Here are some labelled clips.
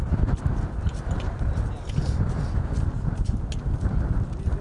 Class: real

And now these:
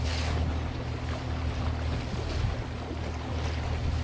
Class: real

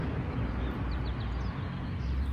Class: real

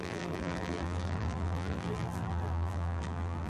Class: fake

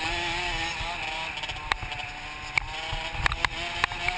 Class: real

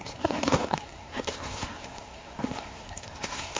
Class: fake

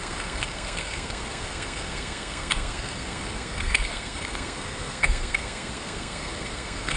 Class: fake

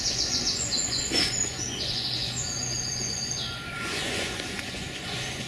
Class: fake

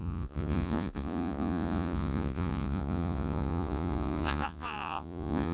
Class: fake